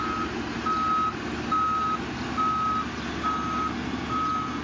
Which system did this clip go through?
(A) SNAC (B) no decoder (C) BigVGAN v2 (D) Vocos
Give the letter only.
B